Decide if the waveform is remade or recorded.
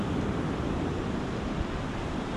recorded